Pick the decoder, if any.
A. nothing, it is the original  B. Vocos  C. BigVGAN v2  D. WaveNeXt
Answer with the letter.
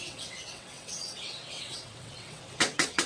D